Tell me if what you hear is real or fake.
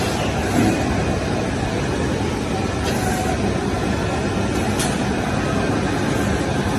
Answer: real